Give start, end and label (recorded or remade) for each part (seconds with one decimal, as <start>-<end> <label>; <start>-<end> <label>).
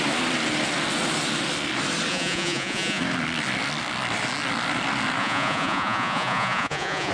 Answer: 0.0-2.1 recorded; 2.1-3.0 remade; 3.0-5.2 recorded; 5.2-7.1 remade